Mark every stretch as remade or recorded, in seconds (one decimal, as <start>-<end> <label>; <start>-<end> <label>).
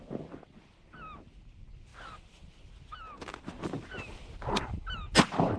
0.0-5.6 recorded